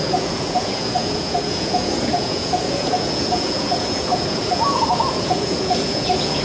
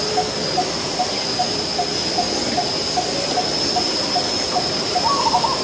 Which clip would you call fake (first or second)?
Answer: first